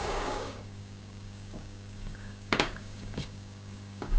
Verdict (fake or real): fake